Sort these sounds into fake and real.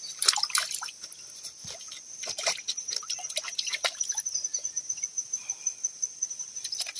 real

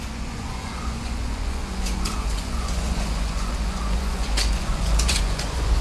fake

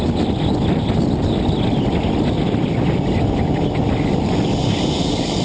real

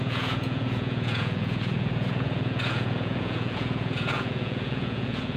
fake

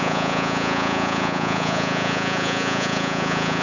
fake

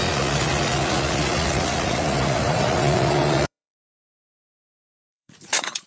fake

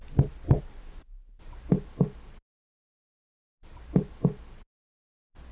real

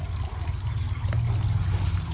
real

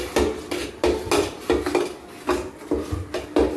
real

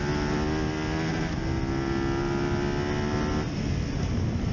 real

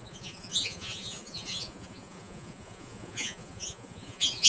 fake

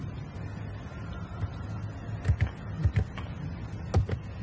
real